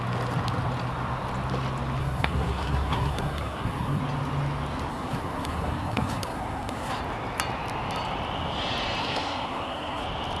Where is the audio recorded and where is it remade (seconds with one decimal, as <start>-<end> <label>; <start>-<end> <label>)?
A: 0.0-2.0 recorded; 2.0-4.0 remade; 4.0-4.9 recorded; 4.9-7.0 remade; 7.0-9.0 recorded; 9.0-10.0 remade; 10.0-10.4 recorded